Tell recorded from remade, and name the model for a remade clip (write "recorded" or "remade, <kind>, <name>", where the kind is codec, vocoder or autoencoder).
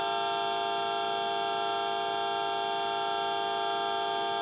recorded